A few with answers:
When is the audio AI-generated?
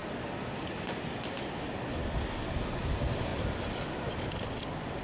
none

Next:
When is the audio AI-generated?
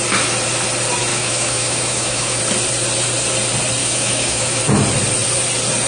1.1-2.4 (autoencoder, DAC-VAE); 3.8-4.6